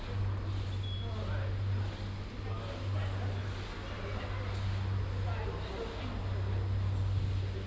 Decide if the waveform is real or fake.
real